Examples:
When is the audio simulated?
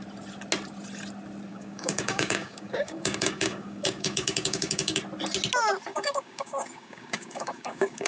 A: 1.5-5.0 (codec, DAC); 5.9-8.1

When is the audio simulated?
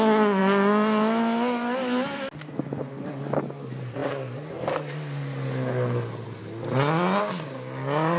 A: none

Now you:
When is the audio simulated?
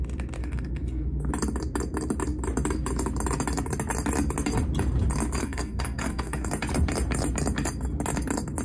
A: 0.4-1.3 (codec, SNAC); 5.4-6.5